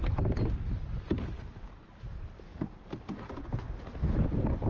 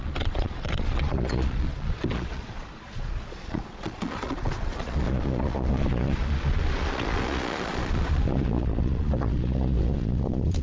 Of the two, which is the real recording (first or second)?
first